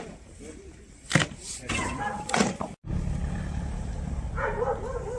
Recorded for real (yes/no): yes